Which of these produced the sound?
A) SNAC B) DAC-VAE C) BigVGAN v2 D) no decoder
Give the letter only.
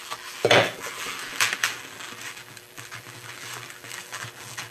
C